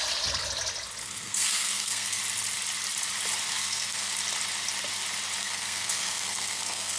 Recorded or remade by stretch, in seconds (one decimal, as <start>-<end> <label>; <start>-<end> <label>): 0.0-1.0 recorded; 1.0-2.2 remade; 2.2-3.5 recorded; 3.5-4.1 remade; 4.1-5.4 recorded; 5.4-7.0 remade